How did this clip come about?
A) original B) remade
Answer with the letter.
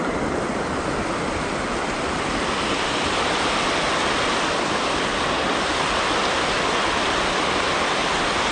A